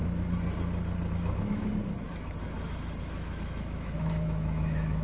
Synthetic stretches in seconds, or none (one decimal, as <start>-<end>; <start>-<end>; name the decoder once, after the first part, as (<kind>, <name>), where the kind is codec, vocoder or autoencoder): 1.1-1.7 (autoencoder, DAC-VAE); 3.0-5.0